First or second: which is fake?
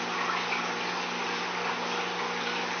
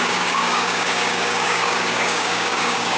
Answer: second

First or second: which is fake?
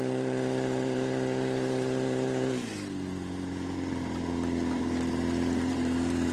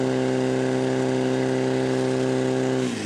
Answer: first